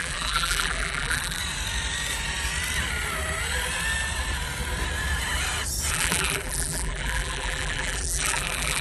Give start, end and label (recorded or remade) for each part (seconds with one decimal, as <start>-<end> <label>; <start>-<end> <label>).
0.0-1.4 remade; 1.4-5.9 recorded; 5.9-8.8 remade